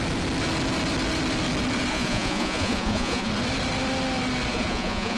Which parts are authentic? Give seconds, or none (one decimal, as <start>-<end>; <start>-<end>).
0.0-1.9; 3.3-4.5

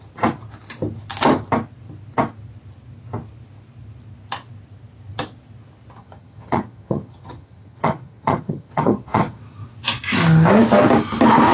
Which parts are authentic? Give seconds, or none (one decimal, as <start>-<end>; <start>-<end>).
0.0-6.0; 9.4-11.5

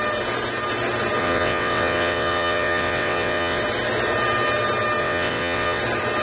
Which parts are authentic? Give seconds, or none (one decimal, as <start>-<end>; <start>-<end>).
0.0-1.2; 3.6-5.0; 5.8-6.2

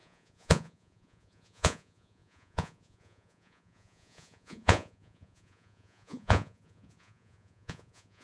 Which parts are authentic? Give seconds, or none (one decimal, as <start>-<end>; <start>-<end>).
none

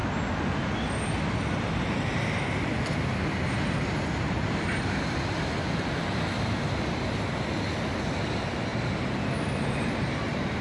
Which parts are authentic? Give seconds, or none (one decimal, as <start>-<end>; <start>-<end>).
0.0-10.6

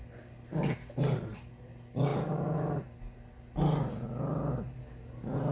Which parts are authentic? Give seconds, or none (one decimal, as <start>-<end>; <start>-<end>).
0.0-5.5

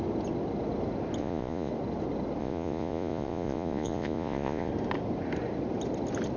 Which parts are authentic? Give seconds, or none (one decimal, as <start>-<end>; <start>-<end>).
0.0-1.2; 1.7-2.4; 4.7-6.4